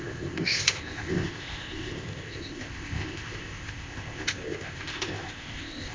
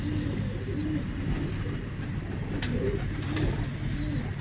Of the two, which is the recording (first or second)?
second